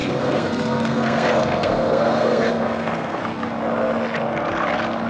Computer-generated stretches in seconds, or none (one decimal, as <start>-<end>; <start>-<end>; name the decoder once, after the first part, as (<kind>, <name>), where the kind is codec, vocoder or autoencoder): 0.0-3.2 (codec, SNAC)